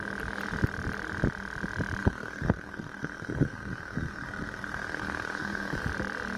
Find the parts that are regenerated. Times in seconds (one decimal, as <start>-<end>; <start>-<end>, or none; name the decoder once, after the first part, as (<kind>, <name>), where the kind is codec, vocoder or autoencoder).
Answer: 2.0-5.8 (codec, SNAC)

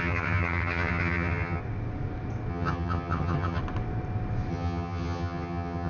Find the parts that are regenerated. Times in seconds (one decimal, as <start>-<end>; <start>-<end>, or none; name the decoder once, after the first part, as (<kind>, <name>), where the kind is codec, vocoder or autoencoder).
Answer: 0.0-1.6 (vocoder, HiFi-GAN); 2.5-3.6; 4.5-5.9

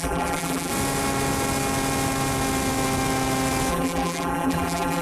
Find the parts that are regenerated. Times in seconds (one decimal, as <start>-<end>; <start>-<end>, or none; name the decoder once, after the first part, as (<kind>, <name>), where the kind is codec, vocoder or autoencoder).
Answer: 0.0-0.7 (vocoder, BigVGAN v2); 3.7-5.0

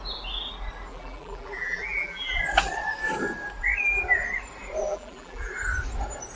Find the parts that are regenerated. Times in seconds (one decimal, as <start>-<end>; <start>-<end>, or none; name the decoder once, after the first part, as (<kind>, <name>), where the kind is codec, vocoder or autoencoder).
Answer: 0.9-2.4 (vocoder, BigVGAN v2); 4.9-5.5

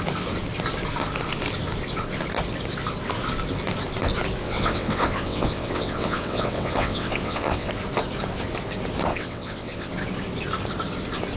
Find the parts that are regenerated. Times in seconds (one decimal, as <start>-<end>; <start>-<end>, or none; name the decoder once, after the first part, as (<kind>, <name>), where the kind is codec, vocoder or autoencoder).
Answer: 4.4-7.7 (vocoder, WaveNeXt); 9.1-9.9